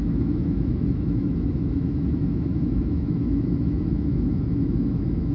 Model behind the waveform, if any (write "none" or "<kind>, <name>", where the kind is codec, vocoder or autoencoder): autoencoder, DAC-VAE